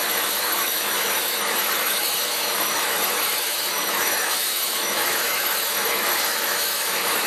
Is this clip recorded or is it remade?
remade